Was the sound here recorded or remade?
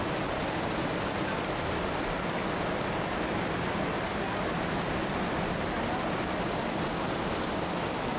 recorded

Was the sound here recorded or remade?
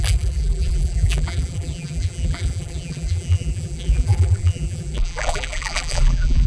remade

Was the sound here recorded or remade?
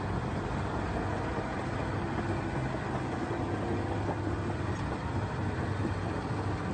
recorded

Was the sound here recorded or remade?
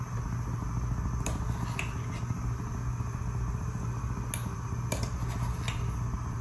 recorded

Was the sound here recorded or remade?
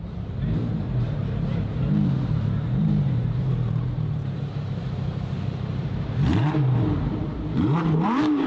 remade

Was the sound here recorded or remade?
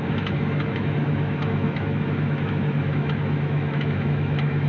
remade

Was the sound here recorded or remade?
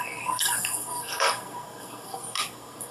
remade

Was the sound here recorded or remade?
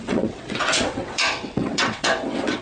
remade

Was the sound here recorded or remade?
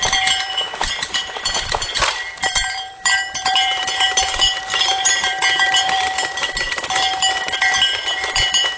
remade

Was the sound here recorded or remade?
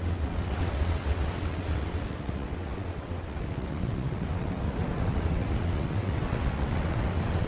remade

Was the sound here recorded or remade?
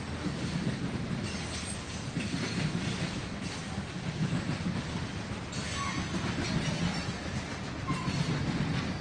recorded